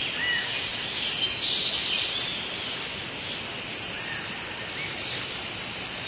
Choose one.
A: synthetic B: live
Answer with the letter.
B